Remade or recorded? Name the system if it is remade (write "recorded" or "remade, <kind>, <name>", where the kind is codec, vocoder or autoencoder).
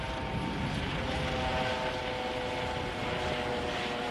recorded